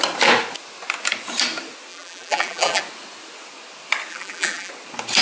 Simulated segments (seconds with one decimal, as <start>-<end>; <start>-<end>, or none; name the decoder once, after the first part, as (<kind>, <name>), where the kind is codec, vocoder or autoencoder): 1.9-2.8 (vocoder, BigVGAN v2); 4.1-4.7